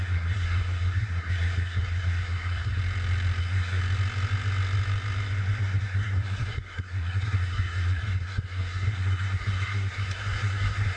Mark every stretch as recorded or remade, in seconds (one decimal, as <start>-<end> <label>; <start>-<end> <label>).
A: 0.0-2.8 remade; 2.8-3.4 recorded; 3.4-3.8 remade; 3.8-5.6 recorded; 5.6-11.0 remade